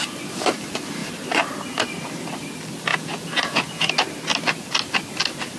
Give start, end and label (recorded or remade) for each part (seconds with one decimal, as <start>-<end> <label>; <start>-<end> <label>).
0.0-2.9 recorded; 2.9-3.9 remade; 3.9-5.6 recorded